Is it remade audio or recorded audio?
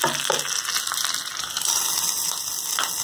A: recorded